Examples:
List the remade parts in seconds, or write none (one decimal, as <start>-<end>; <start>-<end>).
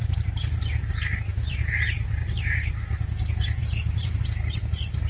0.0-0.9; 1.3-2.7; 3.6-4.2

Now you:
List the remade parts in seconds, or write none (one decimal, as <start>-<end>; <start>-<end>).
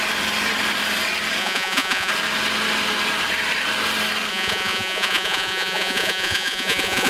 1.4-2.1; 4.3-7.1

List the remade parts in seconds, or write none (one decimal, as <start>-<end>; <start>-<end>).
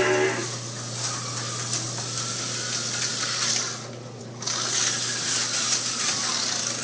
none